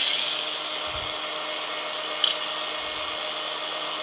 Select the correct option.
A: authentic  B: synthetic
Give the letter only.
A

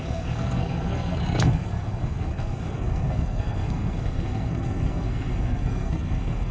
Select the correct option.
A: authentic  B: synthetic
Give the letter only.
B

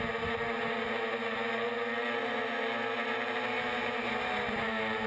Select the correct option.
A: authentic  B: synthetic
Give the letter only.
A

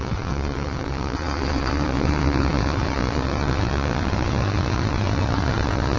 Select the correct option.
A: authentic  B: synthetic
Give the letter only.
B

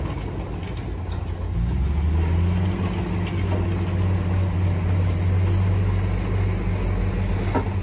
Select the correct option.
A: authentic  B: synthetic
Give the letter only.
A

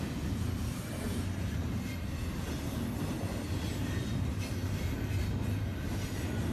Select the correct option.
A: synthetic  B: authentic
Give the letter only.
B